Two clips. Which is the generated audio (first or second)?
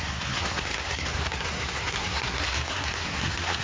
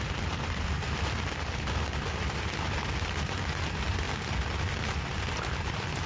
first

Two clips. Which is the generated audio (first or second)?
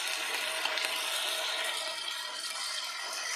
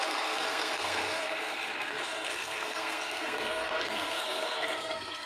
second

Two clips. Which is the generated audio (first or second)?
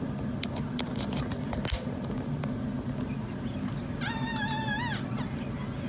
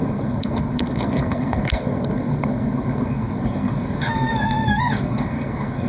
second